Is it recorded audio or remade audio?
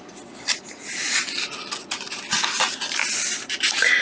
recorded